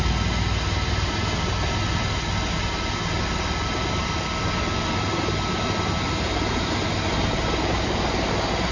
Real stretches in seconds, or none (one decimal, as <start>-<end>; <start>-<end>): 0.0-8.7